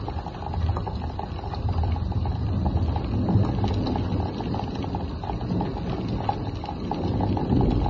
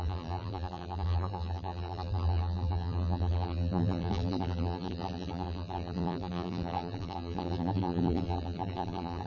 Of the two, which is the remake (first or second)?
second